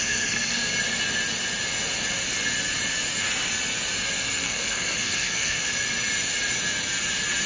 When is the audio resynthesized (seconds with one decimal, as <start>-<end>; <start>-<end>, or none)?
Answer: 0.0-0.6; 4.3-5.7